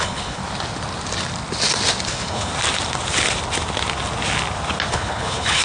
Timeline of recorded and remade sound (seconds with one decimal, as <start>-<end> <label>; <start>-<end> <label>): 0.0-0.4 remade; 0.4-2.1 recorded; 2.1-2.5 remade; 2.5-4.9 recorded; 4.9-5.6 remade